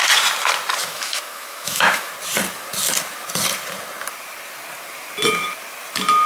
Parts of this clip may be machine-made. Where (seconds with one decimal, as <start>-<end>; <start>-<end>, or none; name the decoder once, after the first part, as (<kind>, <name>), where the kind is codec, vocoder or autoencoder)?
0.8-2.1 (autoencoder, DAC-VAE)